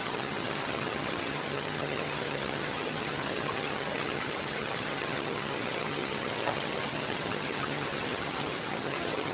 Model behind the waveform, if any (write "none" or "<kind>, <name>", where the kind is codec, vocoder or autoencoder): vocoder, HiFi-GAN